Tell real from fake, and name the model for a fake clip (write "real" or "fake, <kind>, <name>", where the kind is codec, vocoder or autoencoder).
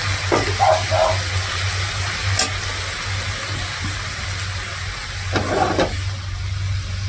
real